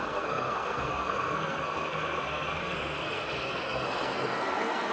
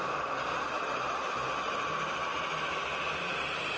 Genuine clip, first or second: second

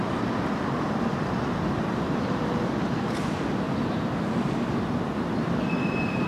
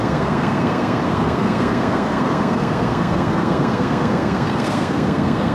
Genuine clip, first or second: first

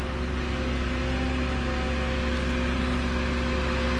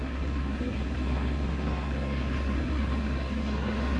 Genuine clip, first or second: first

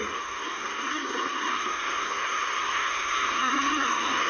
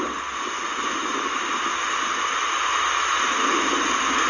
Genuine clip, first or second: second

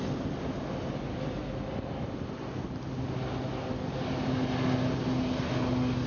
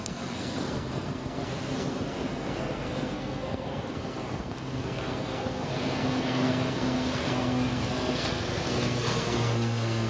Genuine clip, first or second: first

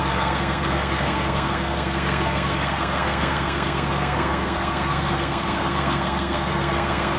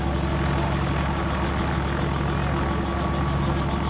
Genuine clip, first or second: second